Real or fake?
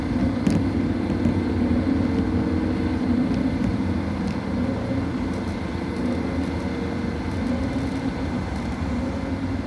real